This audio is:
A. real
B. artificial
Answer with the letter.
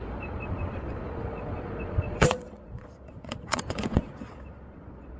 B